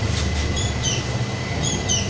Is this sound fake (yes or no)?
no